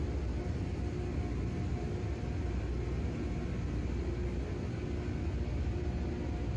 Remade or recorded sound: recorded